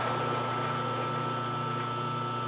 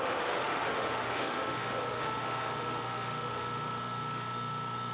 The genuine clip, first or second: first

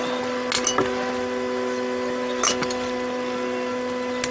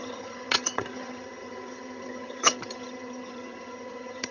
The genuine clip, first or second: first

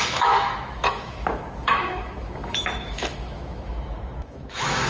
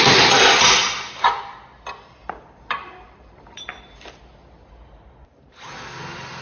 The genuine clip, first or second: second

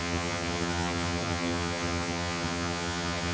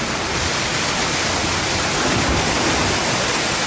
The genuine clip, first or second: second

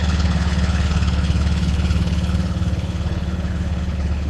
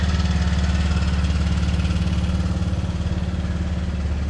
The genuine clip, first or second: second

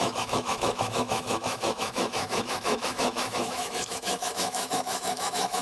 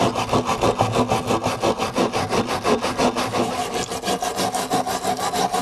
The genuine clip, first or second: second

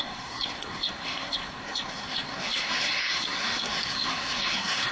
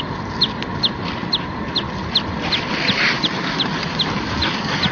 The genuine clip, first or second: second